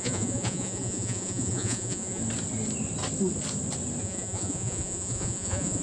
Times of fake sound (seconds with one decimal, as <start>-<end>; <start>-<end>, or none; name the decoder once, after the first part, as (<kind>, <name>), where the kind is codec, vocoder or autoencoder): 0.0-2.2 (vocoder, Vocos); 4.0-5.8